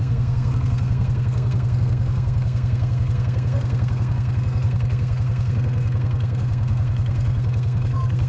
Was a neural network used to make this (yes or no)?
yes